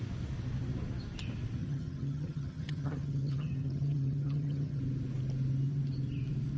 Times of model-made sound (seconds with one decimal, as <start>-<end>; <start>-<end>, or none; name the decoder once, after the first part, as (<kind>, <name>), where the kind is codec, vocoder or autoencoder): 1.6-4.8 (vocoder, HiFi-GAN)